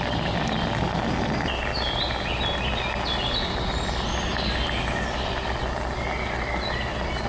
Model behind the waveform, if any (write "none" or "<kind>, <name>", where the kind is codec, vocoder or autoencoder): none